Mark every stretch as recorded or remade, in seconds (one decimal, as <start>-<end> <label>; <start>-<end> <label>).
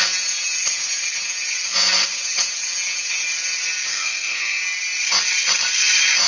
0.0-3.9 recorded; 3.9-4.6 remade; 4.6-6.3 recorded